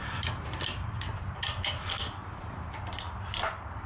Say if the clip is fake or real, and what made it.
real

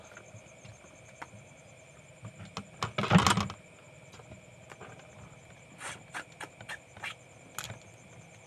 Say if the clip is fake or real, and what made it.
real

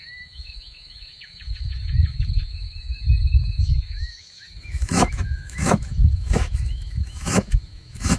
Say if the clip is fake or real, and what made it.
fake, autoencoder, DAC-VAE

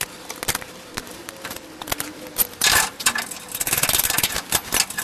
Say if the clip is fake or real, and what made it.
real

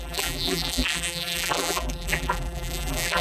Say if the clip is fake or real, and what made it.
fake, vocoder, BigVGAN v2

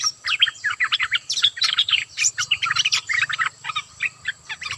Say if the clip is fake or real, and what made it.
fake, vocoder, BigVGAN v2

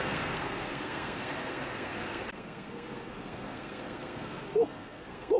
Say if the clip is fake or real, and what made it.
fake, codec, SNAC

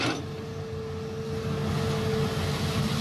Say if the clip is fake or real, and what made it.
real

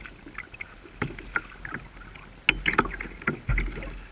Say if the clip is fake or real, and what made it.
real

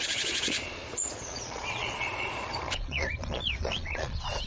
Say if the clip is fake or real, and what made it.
fake, vocoder, Vocos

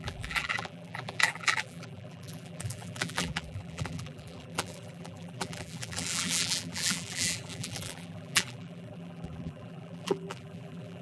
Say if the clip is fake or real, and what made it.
fake, vocoder, BigVGAN v2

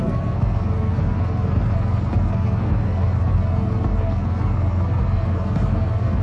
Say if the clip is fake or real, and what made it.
fake, codec, SNAC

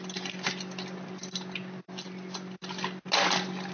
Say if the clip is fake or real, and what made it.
real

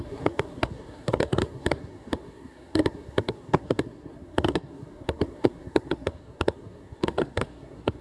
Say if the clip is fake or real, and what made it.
fake, codec, SNAC